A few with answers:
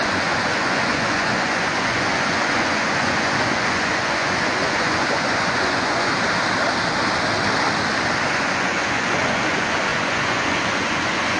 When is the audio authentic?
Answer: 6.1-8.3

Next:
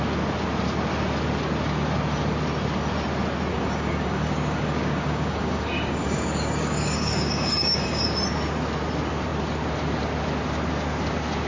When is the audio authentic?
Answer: 0.0-3.5; 8.0-11.5

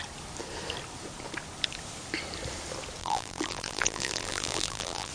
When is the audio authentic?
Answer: 0.0-3.0